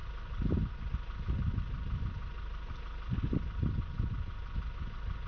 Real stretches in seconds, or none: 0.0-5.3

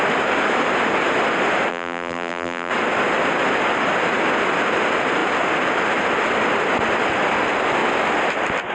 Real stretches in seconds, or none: 0.0-1.7; 2.7-8.7

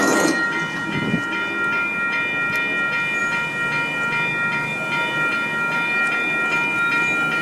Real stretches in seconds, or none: 0.0-7.4

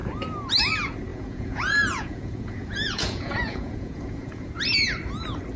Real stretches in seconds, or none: 0.0-1.1; 4.5-5.6